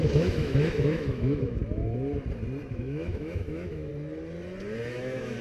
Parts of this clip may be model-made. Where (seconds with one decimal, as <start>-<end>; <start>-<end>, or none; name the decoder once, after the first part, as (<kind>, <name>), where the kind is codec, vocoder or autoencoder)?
0.0-1.6 (autoencoder, DAC-VAE); 2.7-3.9; 4.9-5.4